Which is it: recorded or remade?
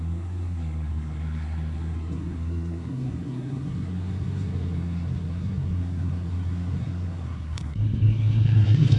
remade